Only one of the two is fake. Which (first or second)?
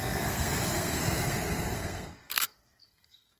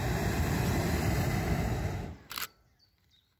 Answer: first